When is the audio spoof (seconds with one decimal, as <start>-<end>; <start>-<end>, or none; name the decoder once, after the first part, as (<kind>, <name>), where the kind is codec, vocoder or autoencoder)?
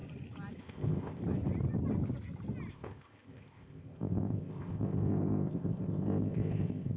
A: 0.6-1.2 (codec, ZipCodec); 2.7-7.0